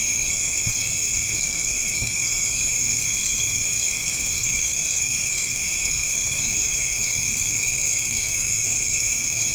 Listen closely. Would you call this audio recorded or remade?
remade